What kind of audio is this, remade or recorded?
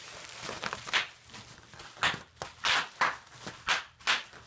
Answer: recorded